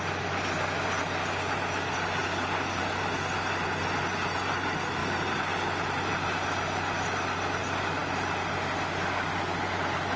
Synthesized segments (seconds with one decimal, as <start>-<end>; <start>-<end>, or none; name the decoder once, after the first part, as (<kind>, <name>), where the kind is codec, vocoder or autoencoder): none